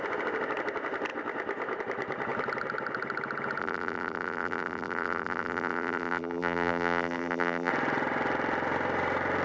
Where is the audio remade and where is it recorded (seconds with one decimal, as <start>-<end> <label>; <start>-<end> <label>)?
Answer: 0.0-3.6 recorded; 3.6-7.7 remade; 7.7-9.4 recorded